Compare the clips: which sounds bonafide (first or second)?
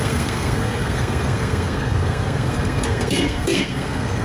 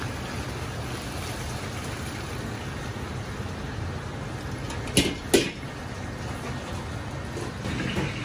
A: second